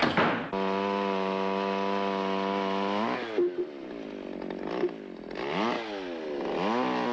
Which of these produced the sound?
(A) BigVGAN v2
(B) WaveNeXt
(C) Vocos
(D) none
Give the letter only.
D